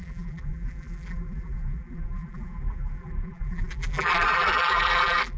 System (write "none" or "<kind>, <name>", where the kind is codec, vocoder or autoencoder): vocoder, BigVGAN v2